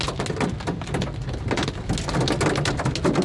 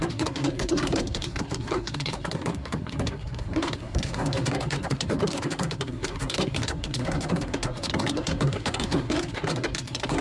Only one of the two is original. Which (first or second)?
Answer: first